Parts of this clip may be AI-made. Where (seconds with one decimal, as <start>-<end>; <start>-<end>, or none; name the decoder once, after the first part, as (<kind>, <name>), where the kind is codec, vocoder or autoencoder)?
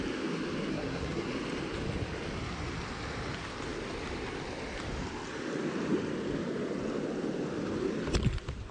0.7-1.3 (codec, SNAC)